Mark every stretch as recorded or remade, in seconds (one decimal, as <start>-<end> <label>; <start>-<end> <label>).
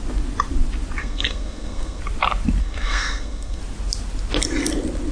0.0-1.0 recorded; 1.0-2.0 remade; 2.0-2.6 recorded; 2.6-3.6 remade; 3.6-5.1 recorded